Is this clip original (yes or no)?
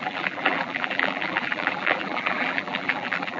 no